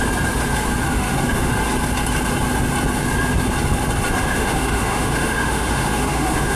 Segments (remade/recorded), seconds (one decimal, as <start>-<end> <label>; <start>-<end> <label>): 0.0-0.9 recorded; 0.9-1.5 remade; 1.5-4.2 recorded; 4.2-6.6 remade